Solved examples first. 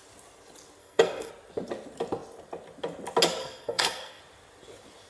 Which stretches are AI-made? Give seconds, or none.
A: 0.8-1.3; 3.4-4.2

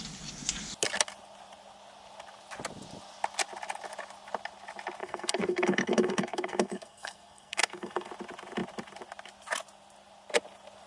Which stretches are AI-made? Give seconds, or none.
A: 5.0-8.1

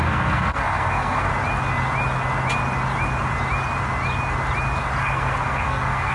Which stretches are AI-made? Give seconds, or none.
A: 0.0-1.3; 5.0-6.1